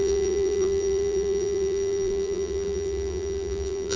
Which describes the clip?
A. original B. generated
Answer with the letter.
B